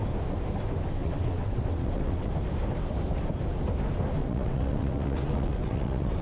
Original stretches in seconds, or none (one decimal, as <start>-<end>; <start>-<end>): 0.0-1.0; 2.3-4.2

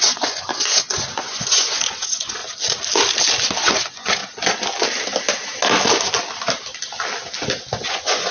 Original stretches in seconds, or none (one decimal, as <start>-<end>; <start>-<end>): 2.4-3.7; 4.2-7.7

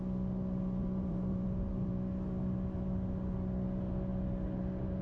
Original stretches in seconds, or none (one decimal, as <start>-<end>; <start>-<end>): 0.0-0.8; 1.9-5.0